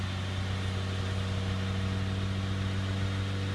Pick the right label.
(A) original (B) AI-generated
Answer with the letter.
A